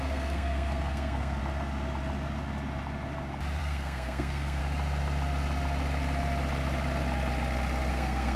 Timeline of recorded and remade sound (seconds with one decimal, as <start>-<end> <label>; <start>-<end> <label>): 0.0-1.4 remade; 1.4-3.6 recorded; 3.6-4.6 remade; 4.6-7.9 recorded; 7.9-8.4 remade